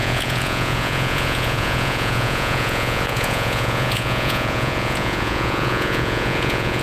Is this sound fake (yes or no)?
yes